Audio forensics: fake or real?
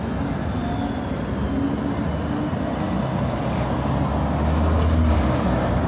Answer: real